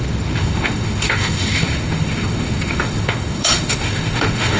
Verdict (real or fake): fake